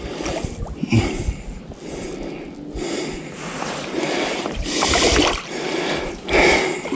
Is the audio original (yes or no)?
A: yes